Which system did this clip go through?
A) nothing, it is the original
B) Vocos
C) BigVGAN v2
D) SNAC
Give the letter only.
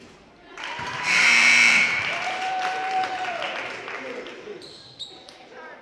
C